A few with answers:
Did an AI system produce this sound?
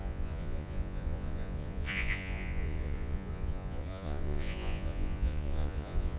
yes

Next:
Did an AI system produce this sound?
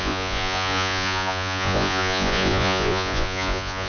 yes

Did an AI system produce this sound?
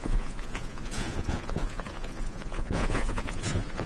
yes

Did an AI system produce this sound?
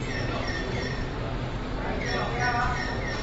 no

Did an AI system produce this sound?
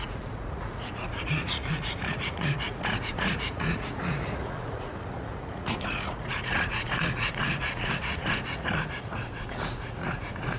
yes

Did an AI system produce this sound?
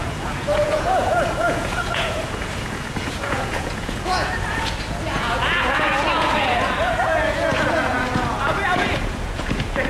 yes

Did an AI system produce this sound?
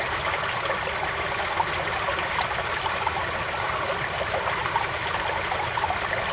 no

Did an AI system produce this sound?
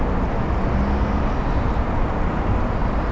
no